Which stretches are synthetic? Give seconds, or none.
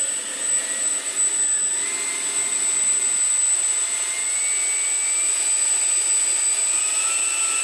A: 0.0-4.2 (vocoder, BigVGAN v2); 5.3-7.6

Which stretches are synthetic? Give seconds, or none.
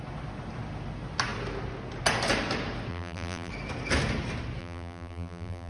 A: 2.9-3.5 (vocoder, BigVGAN v2); 4.6-5.7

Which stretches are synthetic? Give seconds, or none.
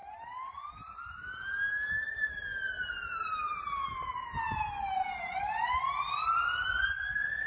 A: 0.7-7.5 (vocoder, BigVGAN v2)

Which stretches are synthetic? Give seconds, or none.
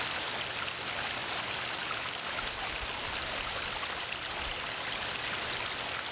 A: 1.2-4.9 (vocoder, BigVGAN v2)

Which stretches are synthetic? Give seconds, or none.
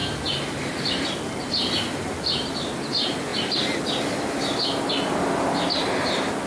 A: 0.0-0.8 (vocoder, BigVGAN v2)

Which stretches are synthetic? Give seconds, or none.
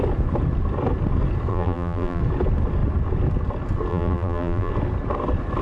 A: 1.5-2.2 (vocoder, BigVGAN v2); 3.9-4.7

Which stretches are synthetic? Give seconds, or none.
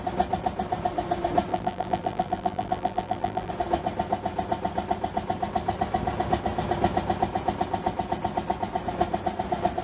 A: 1.5-3.5 (vocoder, BigVGAN v2)